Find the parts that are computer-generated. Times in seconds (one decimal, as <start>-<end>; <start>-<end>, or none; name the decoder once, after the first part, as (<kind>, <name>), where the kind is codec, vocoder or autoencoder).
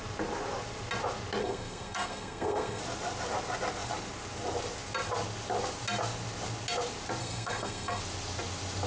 1.4-2.8 (codec, SNAC); 7.2-8.0